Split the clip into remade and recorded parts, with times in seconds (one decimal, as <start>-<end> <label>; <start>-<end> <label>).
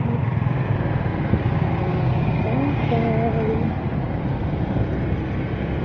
0.0-5.8 recorded